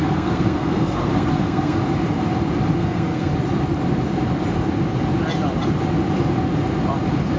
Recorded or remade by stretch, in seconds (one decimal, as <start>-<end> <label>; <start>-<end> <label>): 0.0-1.8 remade; 1.8-2.8 recorded; 2.8-3.3 remade; 3.3-7.4 recorded